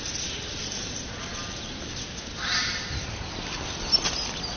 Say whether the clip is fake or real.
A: real